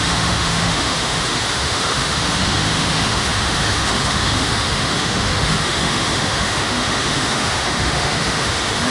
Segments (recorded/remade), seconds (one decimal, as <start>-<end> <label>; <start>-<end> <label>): 0.0-8.9 remade